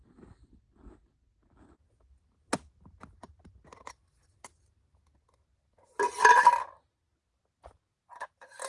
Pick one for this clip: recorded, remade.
recorded